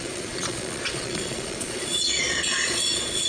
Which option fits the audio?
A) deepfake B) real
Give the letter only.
A